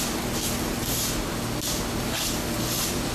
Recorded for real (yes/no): yes